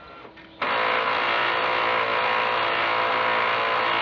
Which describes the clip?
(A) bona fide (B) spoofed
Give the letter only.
A